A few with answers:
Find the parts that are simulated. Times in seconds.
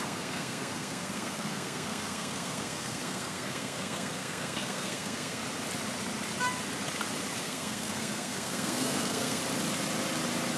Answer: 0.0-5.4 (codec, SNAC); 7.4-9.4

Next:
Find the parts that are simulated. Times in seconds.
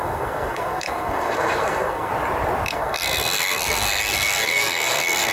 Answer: 0.0-2.1 (codec, SNAC); 2.7-5.3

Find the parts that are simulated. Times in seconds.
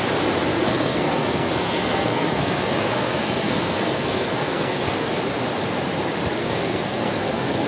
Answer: 0.5-5.1 (codec, SNAC); 6.4-7.7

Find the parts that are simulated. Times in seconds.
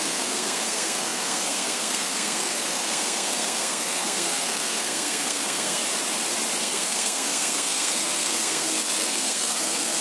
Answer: 0.0-5.8 (codec, SNAC); 6.6-10.0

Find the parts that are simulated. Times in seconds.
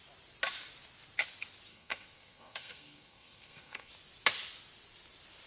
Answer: 1.7-3.9 (codec, SNAC)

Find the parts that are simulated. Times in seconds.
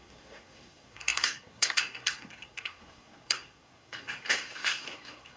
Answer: 0.0-5.4 (codec, SNAC)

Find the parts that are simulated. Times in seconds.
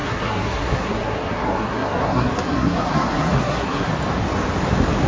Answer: 0.0-3.9 (codec, SNAC)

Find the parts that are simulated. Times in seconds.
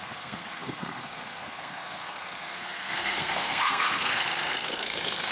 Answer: 0.0-5.3 (codec, SNAC)